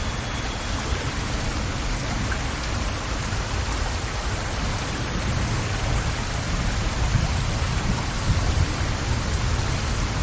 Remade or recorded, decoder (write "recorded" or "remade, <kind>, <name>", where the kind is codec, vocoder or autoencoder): recorded